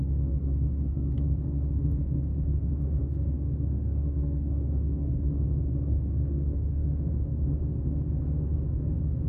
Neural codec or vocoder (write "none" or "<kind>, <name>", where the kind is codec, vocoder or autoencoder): codec, SNAC